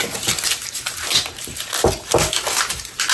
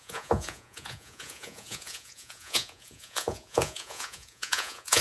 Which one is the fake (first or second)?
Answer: second